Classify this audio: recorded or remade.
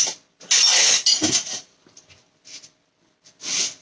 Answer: recorded